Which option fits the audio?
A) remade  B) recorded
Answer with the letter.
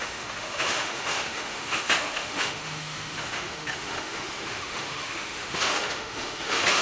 A